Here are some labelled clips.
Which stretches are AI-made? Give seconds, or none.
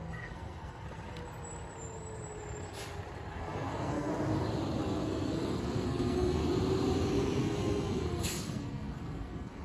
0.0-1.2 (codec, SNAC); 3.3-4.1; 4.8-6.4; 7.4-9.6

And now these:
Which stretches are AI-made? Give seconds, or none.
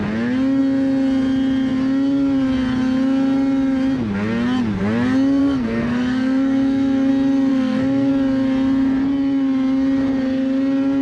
5.4-7.1 (codec, SNAC); 7.5-8.1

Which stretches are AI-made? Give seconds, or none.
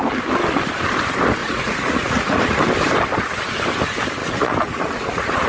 1.4-2.6 (vocoder, Vocos); 4.2-5.5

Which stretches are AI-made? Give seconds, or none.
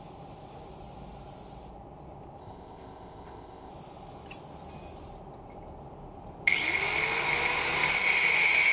2.4-3.7 (codec, ZipCodec)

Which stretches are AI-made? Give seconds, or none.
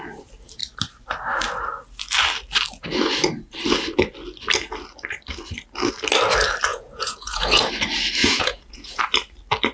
6.7-7.7 (vocoder, Vocos); 8.2-9.0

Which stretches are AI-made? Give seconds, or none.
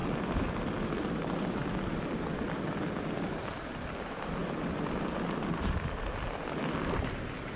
4.4-5.0 (vocoder, BigVGAN v2)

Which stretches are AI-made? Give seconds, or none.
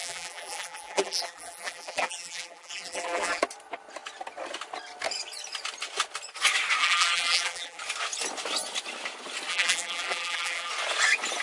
0.0-3.4 (vocoder, BigVGAN v2); 6.8-7.8; 9.5-10.7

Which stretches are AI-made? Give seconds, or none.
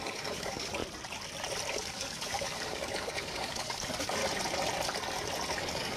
0.0-0.8 (codec, DAC); 1.7-4.2; 5.5-6.0